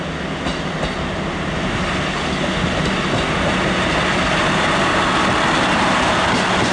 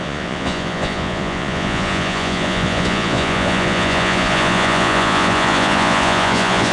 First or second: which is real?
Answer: first